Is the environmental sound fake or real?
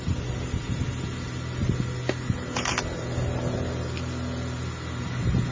real